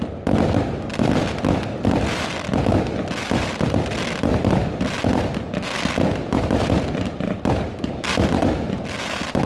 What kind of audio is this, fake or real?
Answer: real